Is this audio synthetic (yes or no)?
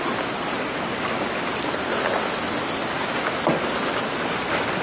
no